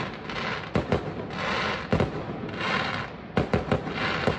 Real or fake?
real